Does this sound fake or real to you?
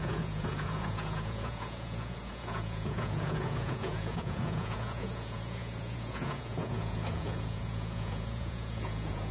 fake